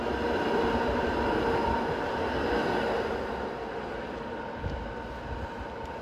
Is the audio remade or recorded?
recorded